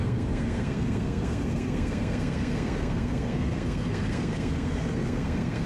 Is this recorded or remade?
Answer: remade